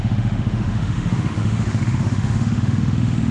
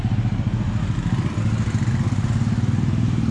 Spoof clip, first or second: first